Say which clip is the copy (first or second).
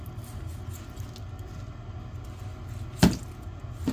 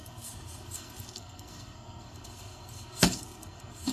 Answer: second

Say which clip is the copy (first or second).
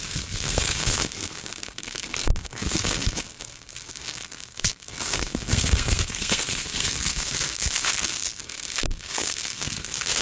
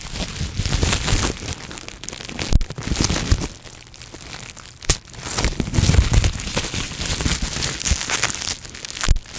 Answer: first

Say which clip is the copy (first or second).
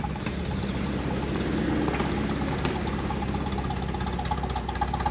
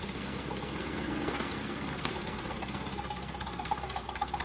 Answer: second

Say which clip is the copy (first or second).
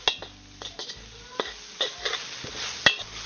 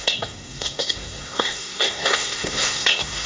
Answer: second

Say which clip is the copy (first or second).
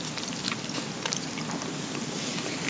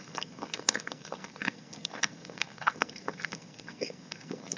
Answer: second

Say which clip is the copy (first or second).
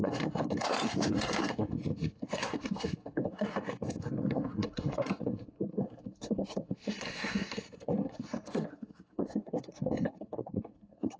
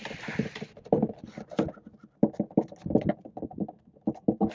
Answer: first